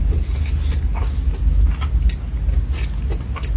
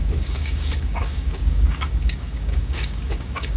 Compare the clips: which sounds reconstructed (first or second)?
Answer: second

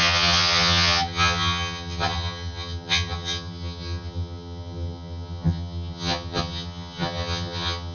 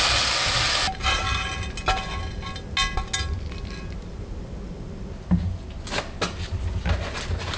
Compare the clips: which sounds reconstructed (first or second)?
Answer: first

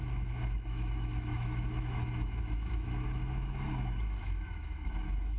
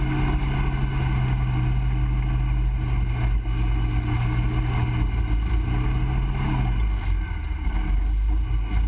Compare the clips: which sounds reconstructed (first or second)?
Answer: first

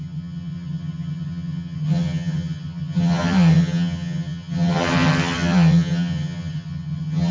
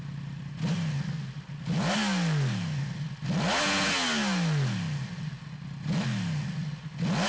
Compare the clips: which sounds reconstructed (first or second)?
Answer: first